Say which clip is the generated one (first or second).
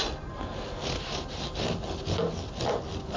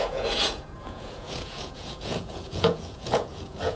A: second